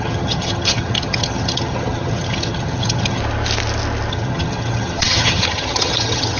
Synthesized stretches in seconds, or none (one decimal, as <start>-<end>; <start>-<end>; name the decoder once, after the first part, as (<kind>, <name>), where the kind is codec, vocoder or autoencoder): 0.0-3.2 (vocoder, HiFi-GAN); 4.1-6.4